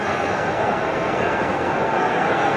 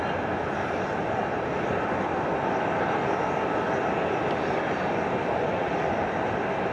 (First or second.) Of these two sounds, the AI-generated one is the first